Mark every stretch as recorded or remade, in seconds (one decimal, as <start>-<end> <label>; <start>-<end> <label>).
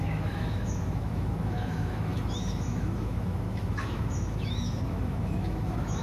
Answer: 0.0-6.0 remade